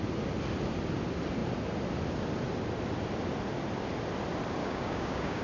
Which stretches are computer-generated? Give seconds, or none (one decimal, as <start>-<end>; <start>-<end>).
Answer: 4.6-5.4